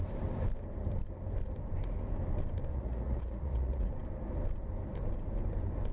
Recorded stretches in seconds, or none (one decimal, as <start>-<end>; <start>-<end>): 0.0-2.7; 3.9-5.9